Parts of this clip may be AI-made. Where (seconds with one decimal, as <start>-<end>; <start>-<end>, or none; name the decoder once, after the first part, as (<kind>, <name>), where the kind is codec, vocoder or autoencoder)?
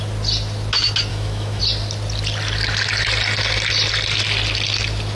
1.1-1.6 (autoencoder, DAC-VAE)